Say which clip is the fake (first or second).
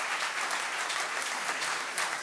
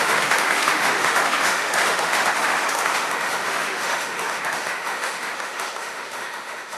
second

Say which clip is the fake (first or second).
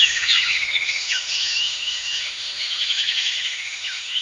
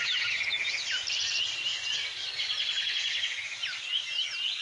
first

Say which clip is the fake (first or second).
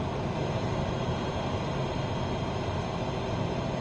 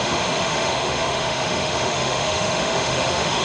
second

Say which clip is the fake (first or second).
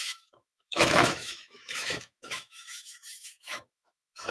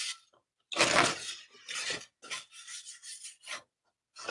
first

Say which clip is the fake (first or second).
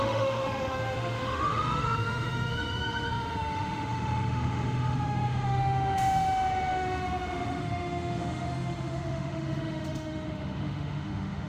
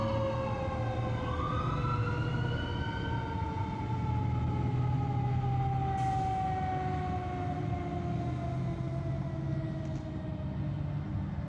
first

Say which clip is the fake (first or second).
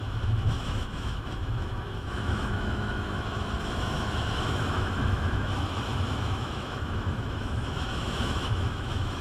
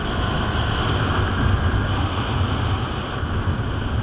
first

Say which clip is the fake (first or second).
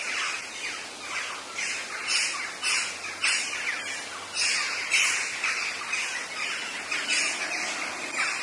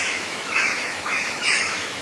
second